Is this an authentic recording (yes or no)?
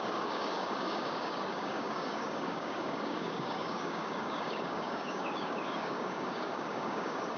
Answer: no